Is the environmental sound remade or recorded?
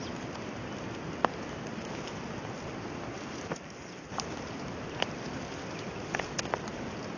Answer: recorded